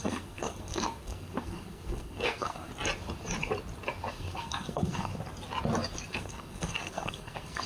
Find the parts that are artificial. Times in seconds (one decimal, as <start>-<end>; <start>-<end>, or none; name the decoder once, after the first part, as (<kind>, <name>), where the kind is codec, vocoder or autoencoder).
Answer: 0.0-2.7 (codec, SNAC); 4.1-5.1; 6.1-7.7

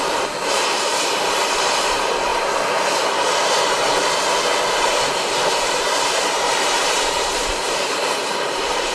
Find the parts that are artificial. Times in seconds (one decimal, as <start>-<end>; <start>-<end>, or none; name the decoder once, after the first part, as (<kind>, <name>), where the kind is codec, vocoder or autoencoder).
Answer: 0.0-2.3 (vocoder, BigVGAN v2); 4.7-8.9

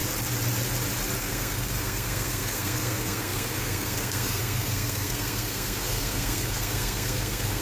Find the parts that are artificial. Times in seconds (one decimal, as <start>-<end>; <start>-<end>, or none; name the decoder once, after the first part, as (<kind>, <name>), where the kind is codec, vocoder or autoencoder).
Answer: 1.2-7.6 (codec, SNAC)

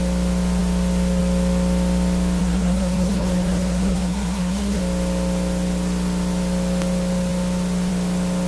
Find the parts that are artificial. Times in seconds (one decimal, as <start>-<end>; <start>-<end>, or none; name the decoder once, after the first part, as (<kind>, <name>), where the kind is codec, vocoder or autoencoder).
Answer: 2.4-4.8 (codec, SNAC)

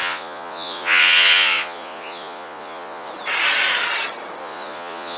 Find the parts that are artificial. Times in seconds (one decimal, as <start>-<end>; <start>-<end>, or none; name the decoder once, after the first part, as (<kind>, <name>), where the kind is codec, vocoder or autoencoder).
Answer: 0.0-3.1 (vocoder, Vocos); 4.4-5.2

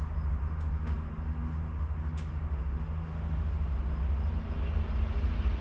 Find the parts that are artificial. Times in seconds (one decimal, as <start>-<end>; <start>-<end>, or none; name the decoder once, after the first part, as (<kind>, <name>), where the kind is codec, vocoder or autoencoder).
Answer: 0.4-3.8 (autoencoder, DAC-VAE)

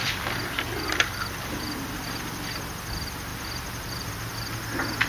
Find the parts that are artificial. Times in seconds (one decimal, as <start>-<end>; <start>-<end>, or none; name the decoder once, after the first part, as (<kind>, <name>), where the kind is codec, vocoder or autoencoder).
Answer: 0.0-2.0 (vocoder, BigVGAN v2); 3.3-4.1

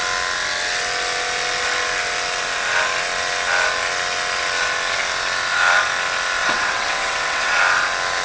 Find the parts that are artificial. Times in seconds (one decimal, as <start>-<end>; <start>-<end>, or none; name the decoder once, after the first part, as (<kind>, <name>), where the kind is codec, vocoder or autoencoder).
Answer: 6.4-7.6 (vocoder, WaveNeXt)